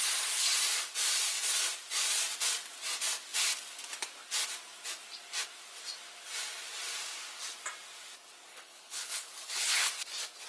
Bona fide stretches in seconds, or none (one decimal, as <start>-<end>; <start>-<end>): 0.0-8.5; 9.9-10.5